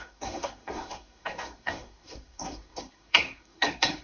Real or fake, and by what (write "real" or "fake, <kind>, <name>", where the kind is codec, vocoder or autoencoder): fake, codec, SNAC